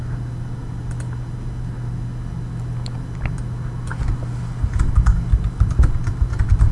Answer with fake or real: real